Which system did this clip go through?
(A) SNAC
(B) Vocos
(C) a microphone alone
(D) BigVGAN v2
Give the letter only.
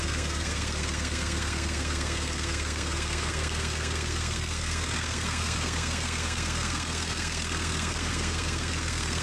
A